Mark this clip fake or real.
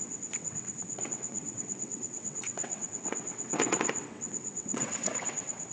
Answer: fake